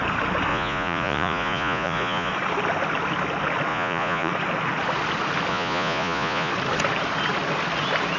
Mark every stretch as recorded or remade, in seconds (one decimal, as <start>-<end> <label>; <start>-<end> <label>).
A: 0.0-0.5 recorded; 0.5-2.3 remade; 2.3-3.7 recorded; 3.7-4.3 remade; 4.3-5.5 recorded; 5.5-6.5 remade; 6.5-8.2 recorded